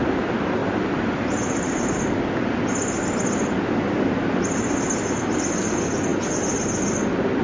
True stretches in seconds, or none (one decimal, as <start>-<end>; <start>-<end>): 0.0-0.6; 1.9-7.4